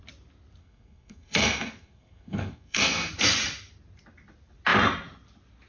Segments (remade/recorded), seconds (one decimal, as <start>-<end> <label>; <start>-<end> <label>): 0.0-0.6 recorded; 0.6-3.1 remade; 3.1-5.7 recorded